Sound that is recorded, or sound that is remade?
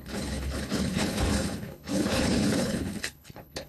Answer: remade